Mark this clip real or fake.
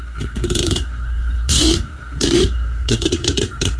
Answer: fake